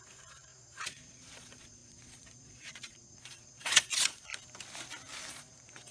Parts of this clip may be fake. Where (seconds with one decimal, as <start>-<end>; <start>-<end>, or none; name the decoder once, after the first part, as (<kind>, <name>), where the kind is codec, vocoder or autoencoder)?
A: 0.0-4.3 (vocoder, Vocos); 5.3-5.9